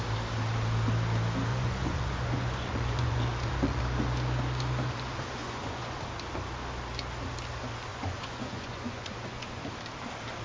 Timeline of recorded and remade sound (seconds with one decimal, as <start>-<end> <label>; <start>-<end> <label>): 0.0-1.5 recorded; 1.5-3.8 remade; 3.8-5.4 recorded; 5.4-6.0 remade; 6.0-7.9 recorded; 7.9-9.6 remade; 9.6-10.4 recorded